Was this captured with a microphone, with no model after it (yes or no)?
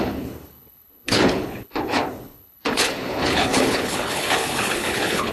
no